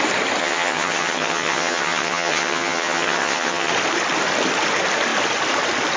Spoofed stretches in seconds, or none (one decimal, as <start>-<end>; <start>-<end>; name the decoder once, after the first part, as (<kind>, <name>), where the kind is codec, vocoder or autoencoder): 0.4-3.7 (vocoder, HiFi-GAN)